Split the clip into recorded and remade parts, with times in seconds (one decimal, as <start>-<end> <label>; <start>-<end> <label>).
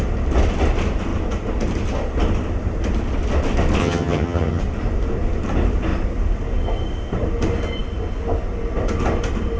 0.0-3.8 recorded; 3.8-4.6 remade; 4.6-9.6 recorded